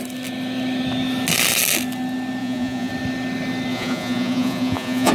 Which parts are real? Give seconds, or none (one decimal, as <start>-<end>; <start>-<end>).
0.0-2.4; 2.9-3.7